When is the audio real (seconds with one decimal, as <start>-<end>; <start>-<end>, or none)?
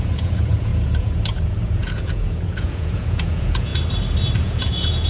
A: 3.7-4.4